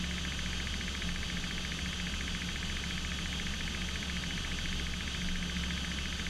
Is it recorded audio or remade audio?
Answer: recorded